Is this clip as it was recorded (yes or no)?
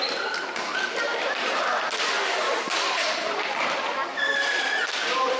no